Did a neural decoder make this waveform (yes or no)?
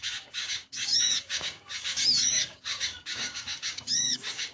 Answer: yes